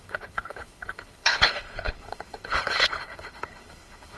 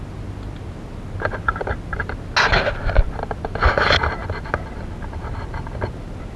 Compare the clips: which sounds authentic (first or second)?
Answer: second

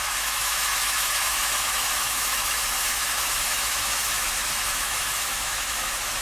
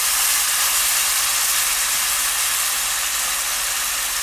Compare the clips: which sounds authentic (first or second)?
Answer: second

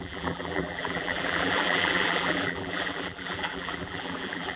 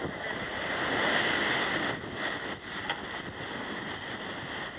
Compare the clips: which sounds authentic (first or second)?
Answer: second